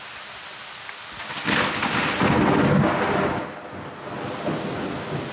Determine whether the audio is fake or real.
real